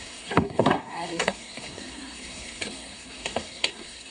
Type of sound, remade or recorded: remade